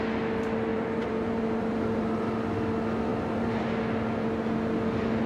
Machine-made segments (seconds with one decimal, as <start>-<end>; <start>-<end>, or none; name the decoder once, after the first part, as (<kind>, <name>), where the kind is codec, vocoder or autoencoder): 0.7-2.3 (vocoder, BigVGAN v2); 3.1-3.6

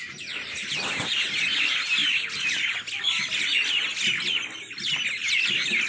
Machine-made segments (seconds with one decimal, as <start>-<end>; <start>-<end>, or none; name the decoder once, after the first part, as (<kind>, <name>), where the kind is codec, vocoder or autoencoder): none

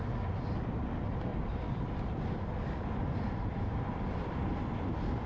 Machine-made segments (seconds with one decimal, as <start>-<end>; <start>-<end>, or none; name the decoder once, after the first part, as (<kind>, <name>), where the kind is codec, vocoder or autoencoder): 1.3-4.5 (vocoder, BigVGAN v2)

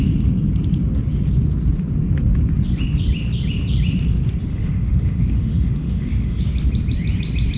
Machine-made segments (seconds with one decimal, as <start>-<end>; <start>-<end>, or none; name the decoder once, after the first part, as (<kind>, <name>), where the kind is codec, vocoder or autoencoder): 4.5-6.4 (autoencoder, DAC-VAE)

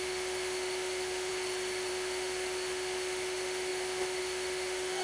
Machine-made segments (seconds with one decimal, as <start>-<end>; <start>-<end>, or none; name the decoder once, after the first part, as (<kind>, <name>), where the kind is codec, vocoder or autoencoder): 0.0-1.3 (autoencoder, DAC-VAE); 1.9-5.0

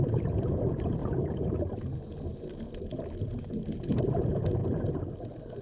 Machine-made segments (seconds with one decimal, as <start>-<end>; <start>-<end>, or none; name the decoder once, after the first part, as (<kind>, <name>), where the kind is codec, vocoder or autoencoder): 0.0-1.0 (vocoder, BigVGAN v2); 3.4-4.6